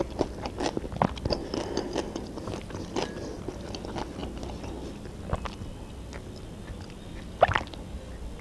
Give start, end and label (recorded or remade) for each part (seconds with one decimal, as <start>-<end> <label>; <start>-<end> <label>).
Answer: 0.0-8.4 recorded